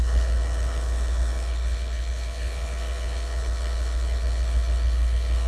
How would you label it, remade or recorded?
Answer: remade